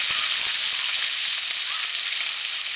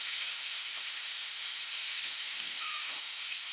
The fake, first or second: second